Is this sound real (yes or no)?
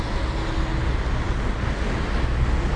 yes